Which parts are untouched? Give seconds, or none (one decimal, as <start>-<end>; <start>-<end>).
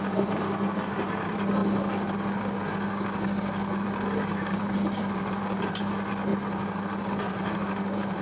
1.6-4.3; 6.3-7.3